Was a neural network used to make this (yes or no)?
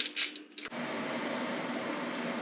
no